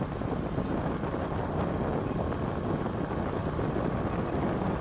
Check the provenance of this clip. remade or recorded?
recorded